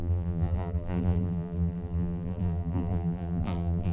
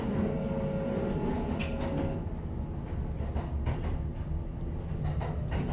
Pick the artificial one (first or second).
first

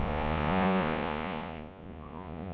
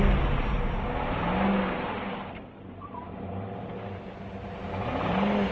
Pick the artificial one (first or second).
first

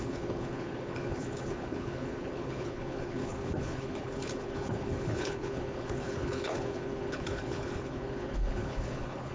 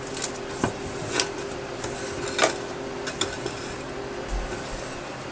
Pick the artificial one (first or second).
first